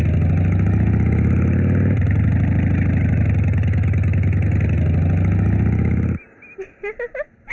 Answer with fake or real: real